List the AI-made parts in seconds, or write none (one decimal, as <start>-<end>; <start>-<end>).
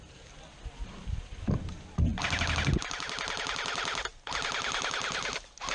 none